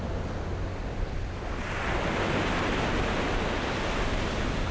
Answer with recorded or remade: recorded